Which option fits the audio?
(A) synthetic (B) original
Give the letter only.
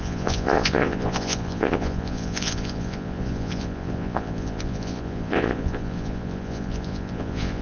A